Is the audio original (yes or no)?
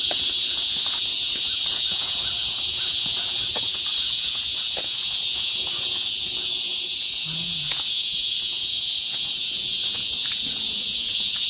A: no